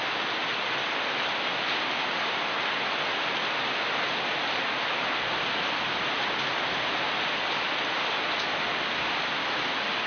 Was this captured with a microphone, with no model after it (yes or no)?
yes